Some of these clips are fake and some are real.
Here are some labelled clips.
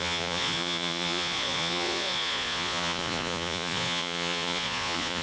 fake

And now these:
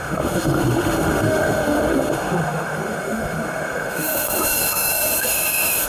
fake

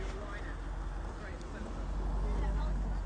real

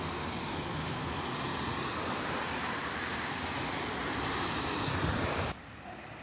fake